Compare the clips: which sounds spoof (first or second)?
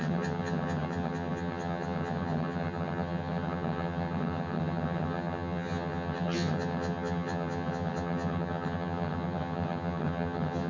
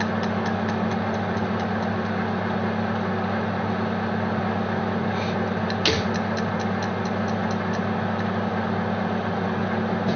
first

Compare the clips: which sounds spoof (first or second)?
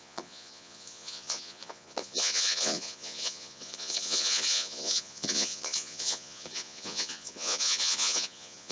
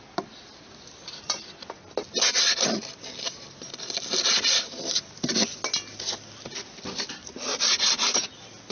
first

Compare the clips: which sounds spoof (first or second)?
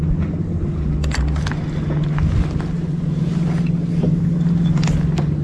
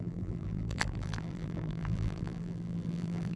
second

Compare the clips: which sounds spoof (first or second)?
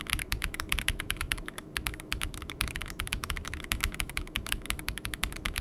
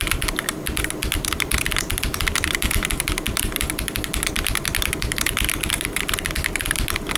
first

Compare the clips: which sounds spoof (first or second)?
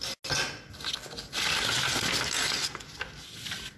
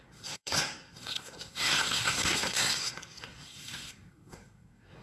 second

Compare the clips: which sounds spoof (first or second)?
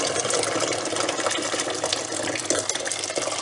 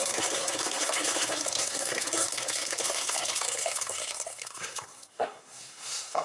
second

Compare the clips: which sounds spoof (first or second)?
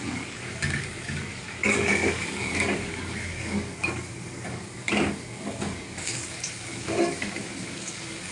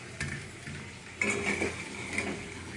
first